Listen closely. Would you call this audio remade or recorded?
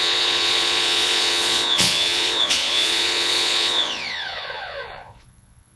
remade